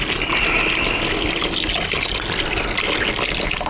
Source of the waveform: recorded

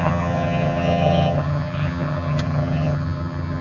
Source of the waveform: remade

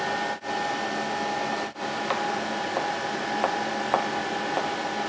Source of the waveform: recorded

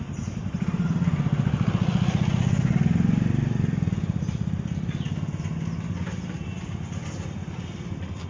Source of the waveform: recorded